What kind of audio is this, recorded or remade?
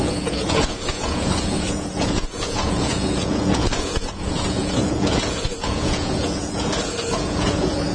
remade